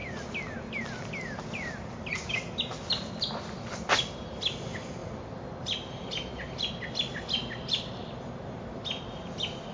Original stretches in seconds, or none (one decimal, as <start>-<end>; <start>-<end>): 0.0-9.7